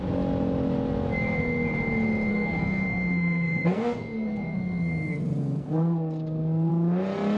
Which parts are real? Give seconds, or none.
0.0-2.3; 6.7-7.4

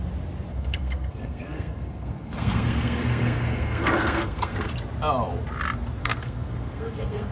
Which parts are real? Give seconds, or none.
0.0-0.5; 4.7-6.0

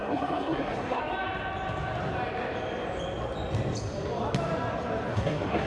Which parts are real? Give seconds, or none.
1.0-5.1

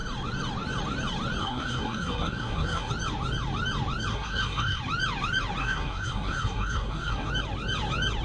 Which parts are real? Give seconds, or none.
0.0-1.4; 2.9-4.1; 4.8-5.6; 7.3-8.2

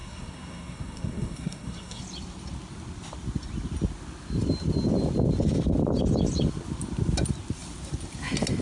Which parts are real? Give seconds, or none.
2.0-8.6